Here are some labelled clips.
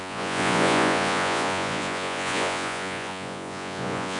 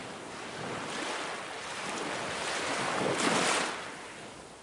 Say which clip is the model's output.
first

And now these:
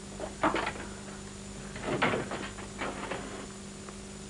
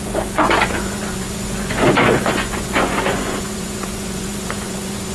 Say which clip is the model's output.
second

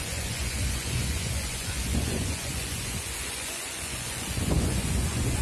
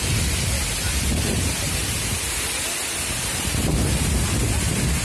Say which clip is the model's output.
first